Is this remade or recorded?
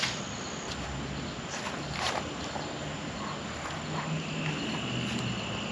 recorded